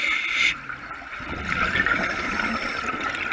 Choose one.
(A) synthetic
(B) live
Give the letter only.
B